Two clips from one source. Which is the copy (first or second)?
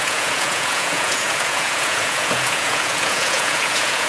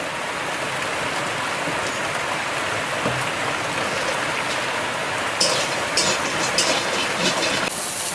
first